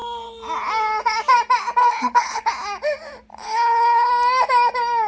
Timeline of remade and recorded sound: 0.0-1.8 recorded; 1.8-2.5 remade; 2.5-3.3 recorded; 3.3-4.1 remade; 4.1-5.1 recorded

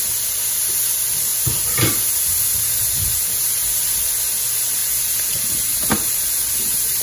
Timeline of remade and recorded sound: 0.0-2.8 recorded; 2.8-3.9 remade; 3.9-4.8 recorded; 4.8-7.0 remade